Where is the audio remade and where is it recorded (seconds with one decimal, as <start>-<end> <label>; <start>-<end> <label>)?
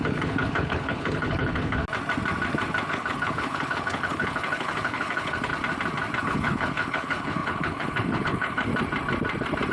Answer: 0.0-1.8 remade; 1.8-2.9 recorded; 2.9-5.5 remade; 5.5-6.2 recorded; 6.2-8.7 remade; 8.7-9.7 recorded